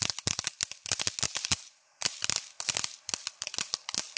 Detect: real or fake real